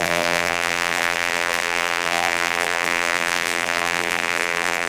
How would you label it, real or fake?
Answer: fake